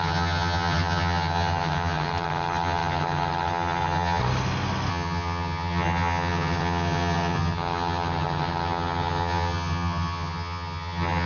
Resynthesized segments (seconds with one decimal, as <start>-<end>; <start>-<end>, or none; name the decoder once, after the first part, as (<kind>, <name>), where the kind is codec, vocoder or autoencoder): 0.0-4.2 (vocoder, HiFi-GAN); 4.9-11.3